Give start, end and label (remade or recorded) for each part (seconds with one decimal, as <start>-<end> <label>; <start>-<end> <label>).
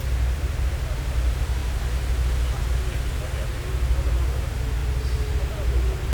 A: 0.0-6.1 recorded